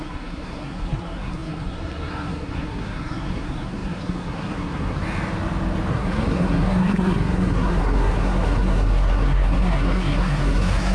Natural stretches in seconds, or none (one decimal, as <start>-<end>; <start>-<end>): 5.0-5.9

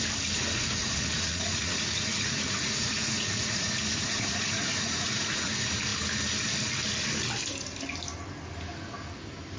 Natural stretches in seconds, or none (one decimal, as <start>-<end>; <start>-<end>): 0.0-0.8; 5.5-9.6

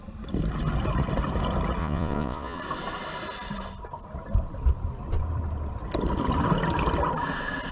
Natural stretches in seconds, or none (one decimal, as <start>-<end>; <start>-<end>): 0.0-1.8; 2.6-7.7

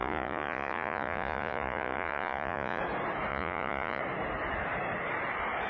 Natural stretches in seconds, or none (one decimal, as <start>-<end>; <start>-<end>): 2.8-3.3; 4.0-5.7

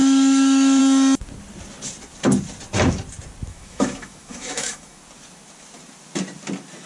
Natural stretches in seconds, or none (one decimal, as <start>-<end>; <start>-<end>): 0.8-3.5; 5.0-6.9

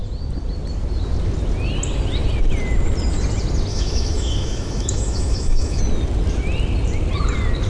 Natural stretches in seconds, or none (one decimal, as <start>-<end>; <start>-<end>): 0.0-3.7; 5.8-7.7

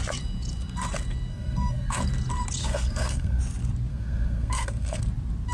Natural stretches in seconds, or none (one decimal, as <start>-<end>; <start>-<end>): 0.0-1.3; 2.0-2.6; 3.4-3.9; 5.0-5.5

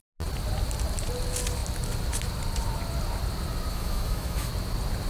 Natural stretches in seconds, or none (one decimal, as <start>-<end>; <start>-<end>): 0.0-3.7; 4.5-5.1